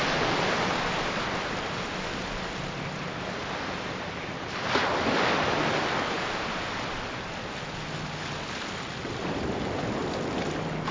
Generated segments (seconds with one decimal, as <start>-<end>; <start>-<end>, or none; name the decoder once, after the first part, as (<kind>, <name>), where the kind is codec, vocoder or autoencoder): 0.0-4.8 (vocoder, BigVGAN v2); 9.2-10.0